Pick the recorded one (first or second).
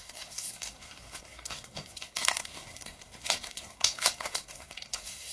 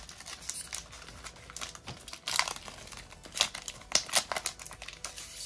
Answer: second